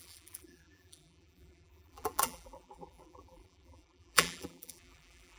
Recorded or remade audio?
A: remade